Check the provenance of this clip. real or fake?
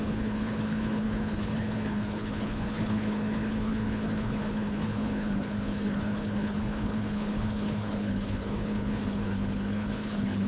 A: fake